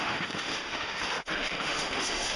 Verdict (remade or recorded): remade